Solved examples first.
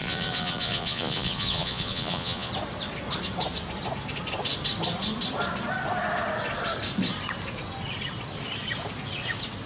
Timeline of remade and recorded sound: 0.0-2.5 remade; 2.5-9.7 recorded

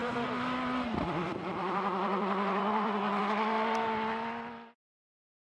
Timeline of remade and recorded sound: 0.0-3.2 remade; 3.2-5.4 recorded

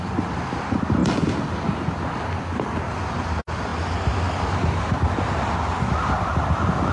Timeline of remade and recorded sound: 0.0-6.9 recorded

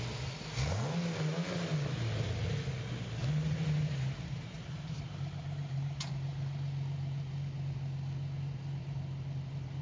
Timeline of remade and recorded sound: 0.0-3.2 recorded; 3.2-6.1 remade; 6.1-9.8 recorded

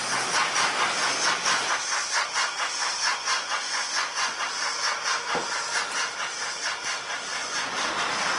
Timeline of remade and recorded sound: 0.0-3.1 recorded; 3.1-4.4 remade; 4.4-7.4 recorded; 7.4-7.9 remade; 7.9-8.4 recorded